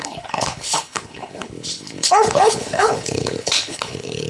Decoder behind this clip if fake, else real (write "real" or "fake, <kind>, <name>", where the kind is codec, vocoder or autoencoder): fake, codec, HILCodec